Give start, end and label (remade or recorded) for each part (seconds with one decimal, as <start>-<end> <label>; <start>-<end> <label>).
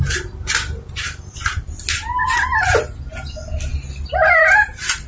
0.0-5.1 recorded